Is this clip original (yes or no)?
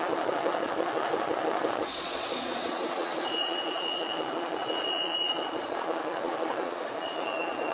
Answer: no